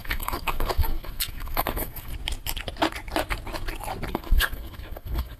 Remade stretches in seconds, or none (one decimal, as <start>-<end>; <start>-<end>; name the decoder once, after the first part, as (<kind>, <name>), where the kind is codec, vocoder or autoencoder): 0.0-2.1 (codec, SNAC); 4.1-5.4